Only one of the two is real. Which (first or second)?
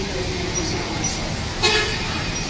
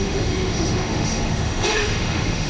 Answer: first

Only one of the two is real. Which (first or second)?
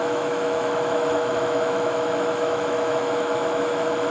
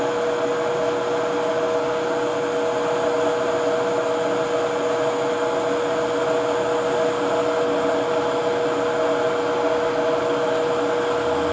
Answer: second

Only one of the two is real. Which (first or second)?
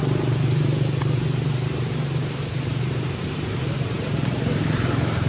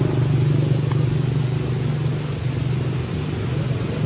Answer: second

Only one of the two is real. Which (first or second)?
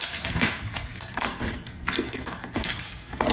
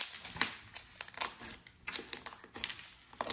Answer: second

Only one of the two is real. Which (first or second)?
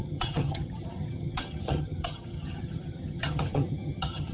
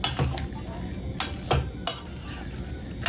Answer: second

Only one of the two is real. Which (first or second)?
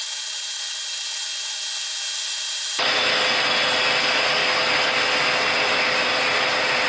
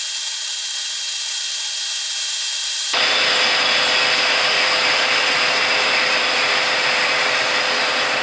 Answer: first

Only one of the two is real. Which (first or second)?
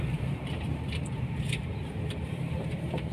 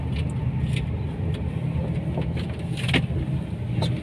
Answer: second